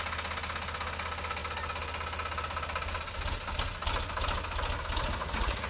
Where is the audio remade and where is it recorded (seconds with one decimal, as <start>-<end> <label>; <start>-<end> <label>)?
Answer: 0.0-5.2 recorded; 5.2-5.7 remade